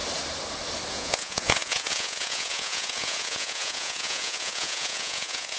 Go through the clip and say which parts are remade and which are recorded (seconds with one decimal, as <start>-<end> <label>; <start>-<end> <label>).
0.0-0.9 recorded; 0.9-5.6 remade